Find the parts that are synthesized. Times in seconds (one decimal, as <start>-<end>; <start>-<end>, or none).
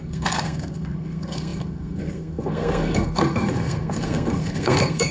0.0-5.1